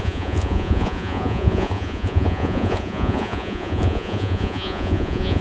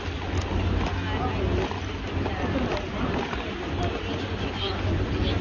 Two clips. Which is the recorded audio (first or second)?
second